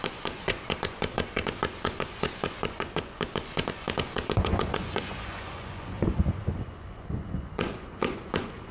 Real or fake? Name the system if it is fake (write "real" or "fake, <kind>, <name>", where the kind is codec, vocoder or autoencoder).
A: fake, vocoder, Vocos